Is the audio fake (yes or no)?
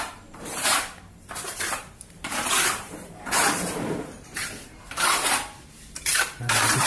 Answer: yes